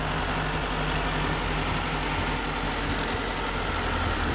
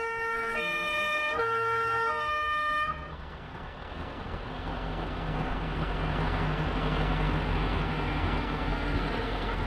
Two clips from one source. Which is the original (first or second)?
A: first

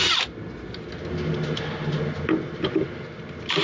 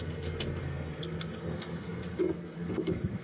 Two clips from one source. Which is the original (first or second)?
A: first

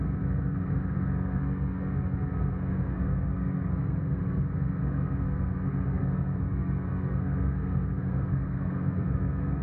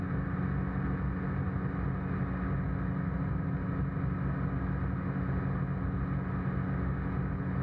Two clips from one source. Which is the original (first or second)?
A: second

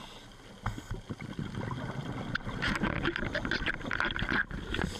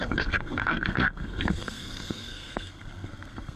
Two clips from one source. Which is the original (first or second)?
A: first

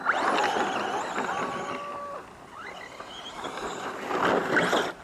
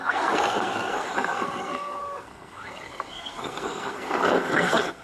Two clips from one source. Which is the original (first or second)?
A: first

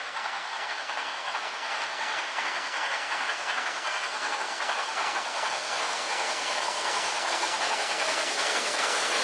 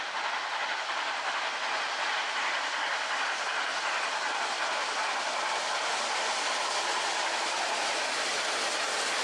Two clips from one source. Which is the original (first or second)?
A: second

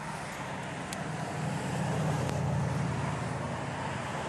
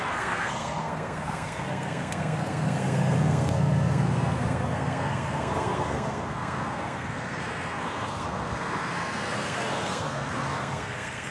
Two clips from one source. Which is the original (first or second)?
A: first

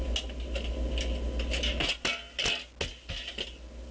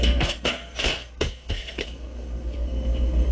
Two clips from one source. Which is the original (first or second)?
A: first